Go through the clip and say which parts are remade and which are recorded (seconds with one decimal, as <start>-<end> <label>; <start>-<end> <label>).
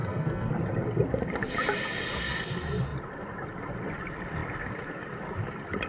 0.0-0.5 remade; 0.5-5.9 recorded